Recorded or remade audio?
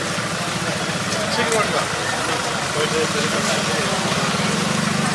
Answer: recorded